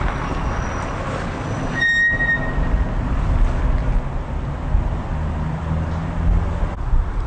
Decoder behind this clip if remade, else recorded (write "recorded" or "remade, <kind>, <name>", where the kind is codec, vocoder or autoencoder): recorded